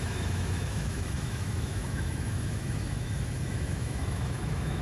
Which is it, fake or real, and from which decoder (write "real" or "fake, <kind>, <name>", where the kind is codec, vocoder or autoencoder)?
fake, autoencoder, DAC-VAE